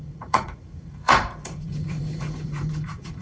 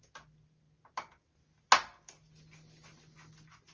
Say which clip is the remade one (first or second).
first